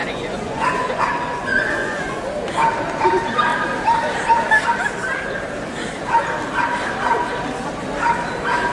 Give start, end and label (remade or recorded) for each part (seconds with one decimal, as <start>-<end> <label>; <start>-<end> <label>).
0.0-1.0 remade; 1.0-1.5 recorded; 1.5-2.2 remade; 2.2-8.7 recorded